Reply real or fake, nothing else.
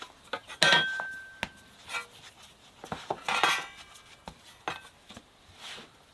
real